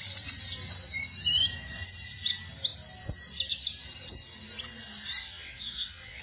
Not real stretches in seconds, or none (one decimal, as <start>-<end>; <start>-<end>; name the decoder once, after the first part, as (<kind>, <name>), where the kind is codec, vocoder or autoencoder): 5.2-6.2 (vocoder, WaveNeXt)